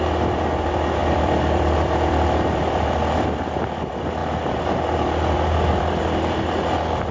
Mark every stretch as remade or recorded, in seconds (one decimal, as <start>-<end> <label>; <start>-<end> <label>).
0.0-1.0 recorded; 1.0-3.0 remade; 3.0-7.1 recorded